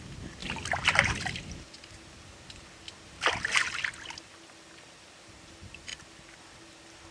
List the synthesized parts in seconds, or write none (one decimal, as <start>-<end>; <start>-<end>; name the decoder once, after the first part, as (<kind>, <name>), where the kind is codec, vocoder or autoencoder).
none